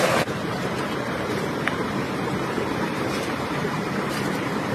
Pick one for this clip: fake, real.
fake